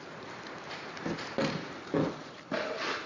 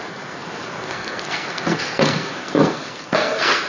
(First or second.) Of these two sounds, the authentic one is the first